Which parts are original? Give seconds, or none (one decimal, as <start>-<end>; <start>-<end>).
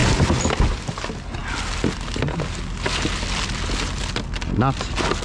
0.0-5.2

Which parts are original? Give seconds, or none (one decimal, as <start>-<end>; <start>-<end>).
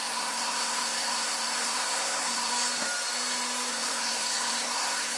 2.5-3.7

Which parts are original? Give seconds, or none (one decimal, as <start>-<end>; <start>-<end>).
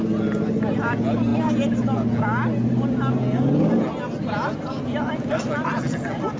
0.0-6.4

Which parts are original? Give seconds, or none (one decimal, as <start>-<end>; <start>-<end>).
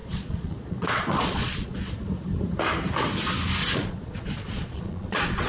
1.8-3.6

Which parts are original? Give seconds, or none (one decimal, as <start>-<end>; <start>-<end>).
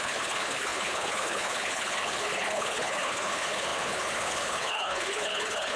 none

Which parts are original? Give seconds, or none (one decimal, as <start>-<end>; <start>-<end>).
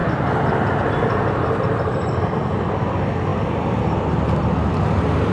0.0-5.3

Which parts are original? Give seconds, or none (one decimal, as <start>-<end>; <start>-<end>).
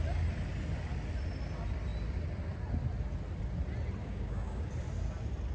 0.0-4.0; 4.7-5.5